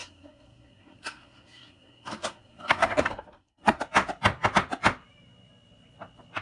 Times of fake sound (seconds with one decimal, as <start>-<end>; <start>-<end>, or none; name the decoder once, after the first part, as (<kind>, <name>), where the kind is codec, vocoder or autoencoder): 0.0-3.8 (codec, SNAC)